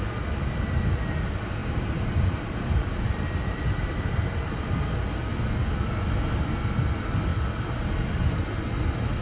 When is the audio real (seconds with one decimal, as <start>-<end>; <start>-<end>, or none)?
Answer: 0.0-1.6; 4.5-9.2